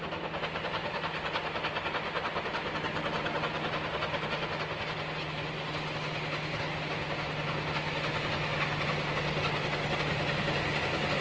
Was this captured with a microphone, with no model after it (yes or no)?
yes